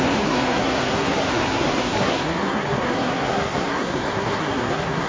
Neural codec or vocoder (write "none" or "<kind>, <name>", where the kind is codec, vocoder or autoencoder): codec, SNAC